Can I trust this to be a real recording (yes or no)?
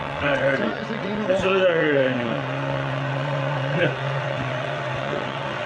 no